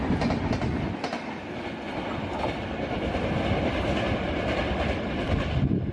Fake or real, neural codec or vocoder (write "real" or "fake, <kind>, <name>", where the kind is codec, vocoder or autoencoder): real